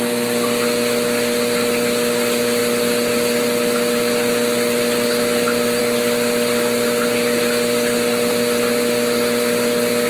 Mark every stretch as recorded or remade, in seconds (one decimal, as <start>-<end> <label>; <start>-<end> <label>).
0.0-10.1 recorded